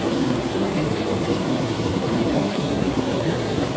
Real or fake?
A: fake